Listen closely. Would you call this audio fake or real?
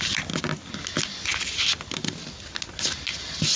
real